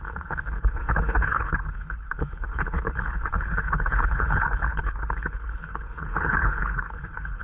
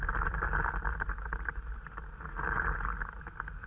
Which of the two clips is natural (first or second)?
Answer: second